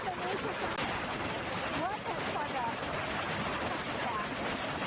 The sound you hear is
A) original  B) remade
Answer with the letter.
A